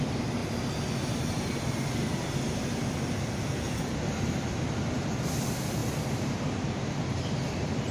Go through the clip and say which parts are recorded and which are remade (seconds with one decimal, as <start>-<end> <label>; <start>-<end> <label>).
0.0-7.9 recorded